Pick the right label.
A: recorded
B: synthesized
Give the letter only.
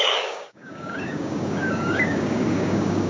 B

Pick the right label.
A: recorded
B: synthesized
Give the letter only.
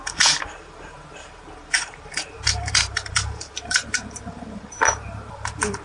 B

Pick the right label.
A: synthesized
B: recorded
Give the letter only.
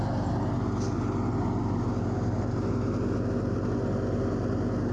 B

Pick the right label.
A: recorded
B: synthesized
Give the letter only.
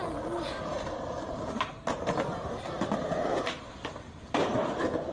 A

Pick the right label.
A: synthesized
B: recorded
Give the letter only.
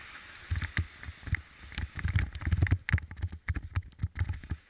B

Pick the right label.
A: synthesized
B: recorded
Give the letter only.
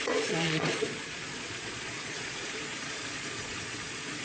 A